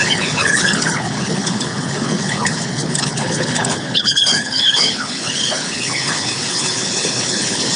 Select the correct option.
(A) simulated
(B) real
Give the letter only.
A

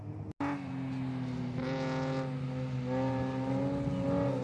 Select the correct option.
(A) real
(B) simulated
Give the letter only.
A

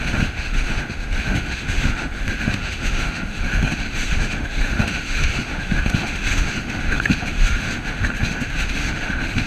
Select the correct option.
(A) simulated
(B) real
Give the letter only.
A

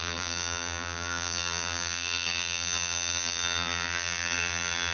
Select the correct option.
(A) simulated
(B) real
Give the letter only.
A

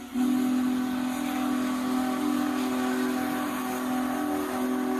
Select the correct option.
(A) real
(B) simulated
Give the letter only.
A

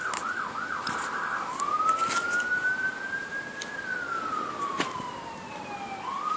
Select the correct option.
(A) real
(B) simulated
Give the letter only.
A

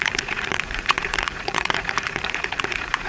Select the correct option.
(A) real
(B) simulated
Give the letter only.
B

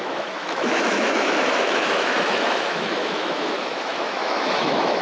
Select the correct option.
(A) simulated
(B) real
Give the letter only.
A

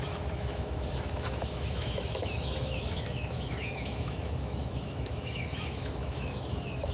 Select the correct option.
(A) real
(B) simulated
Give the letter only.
B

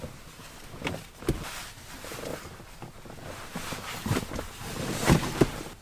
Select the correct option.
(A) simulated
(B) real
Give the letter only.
B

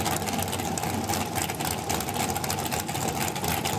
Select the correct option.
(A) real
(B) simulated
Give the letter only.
A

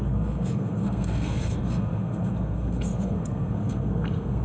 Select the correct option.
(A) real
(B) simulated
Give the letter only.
B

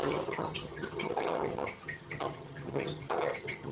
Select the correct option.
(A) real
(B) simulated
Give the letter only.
B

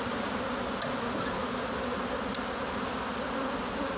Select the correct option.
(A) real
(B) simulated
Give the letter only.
A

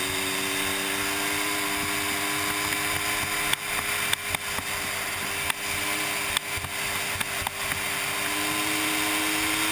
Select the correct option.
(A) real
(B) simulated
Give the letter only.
A